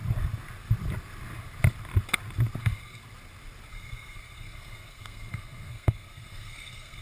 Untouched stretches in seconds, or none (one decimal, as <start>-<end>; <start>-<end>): 0.0-2.6; 3.0-3.7